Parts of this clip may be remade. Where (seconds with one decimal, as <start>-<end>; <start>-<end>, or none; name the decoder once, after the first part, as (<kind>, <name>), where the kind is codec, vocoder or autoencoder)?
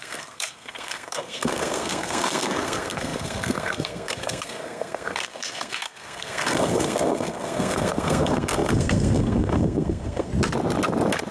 0.0-10.3 (codec, SNAC)